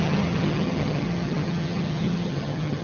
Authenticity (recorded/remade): remade